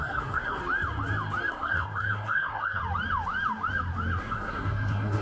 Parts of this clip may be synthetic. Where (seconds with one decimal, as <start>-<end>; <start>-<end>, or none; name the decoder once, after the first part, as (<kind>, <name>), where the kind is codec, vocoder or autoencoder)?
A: 0.0-0.6 (codec, SNAC); 1.5-2.8; 4.2-5.2